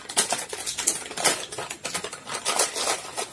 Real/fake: real